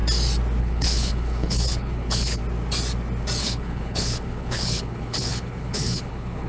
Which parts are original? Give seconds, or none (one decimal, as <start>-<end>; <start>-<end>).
0.0-0.6; 2.4-3.4